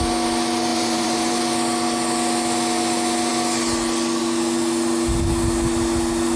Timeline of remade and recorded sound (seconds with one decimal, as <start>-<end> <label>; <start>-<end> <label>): 0.0-0.7 recorded; 0.7-1.4 remade; 1.4-6.4 recorded